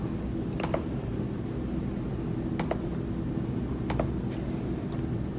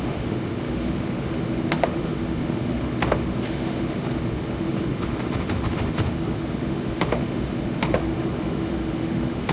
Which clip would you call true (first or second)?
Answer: first